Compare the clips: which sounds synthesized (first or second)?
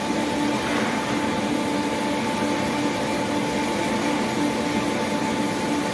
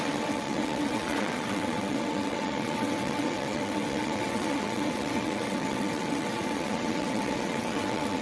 second